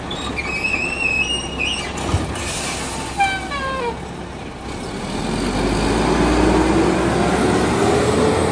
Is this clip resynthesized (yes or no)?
no